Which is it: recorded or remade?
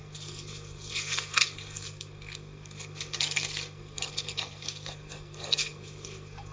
remade